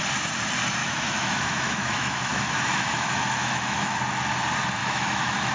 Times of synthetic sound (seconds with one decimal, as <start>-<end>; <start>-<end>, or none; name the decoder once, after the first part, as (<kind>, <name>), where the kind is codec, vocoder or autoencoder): 0.8-4.0 (autoencoder, DAC-VAE); 4.8-5.5